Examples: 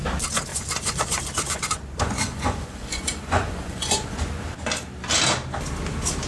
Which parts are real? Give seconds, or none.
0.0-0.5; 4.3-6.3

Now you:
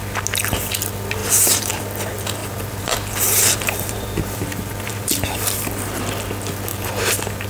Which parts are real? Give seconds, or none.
0.0-1.2; 1.8-2.4; 6.1-7.5